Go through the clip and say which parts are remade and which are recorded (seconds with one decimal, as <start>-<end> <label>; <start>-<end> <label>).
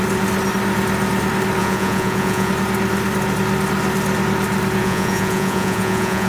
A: 0.0-1.6 recorded; 1.6-2.5 remade; 2.5-4.8 recorded; 4.8-6.3 remade